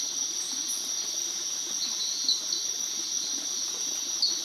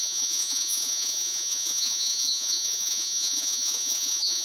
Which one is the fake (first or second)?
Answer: second